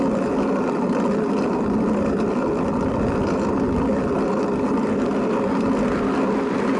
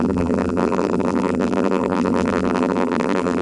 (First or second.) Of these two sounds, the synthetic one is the second